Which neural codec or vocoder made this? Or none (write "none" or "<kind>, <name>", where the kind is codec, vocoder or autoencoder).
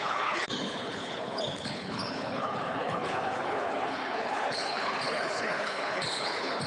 codec, HILCodec